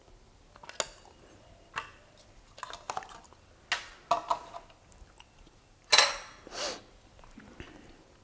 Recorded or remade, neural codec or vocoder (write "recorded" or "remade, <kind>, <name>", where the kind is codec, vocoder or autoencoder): recorded